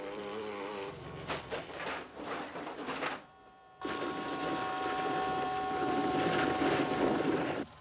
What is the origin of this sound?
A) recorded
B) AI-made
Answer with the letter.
B